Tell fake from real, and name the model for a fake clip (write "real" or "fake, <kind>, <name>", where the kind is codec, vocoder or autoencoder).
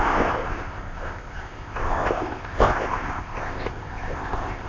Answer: fake, codec, ZipCodec